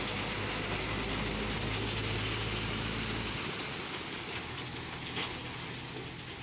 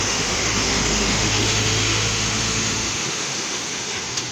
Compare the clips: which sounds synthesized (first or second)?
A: second